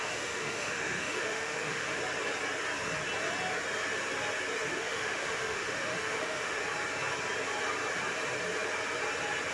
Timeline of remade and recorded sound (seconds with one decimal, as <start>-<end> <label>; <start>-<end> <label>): 0.0-2.0 remade; 2.0-4.7 recorded; 4.7-6.6 remade; 6.6-9.5 recorded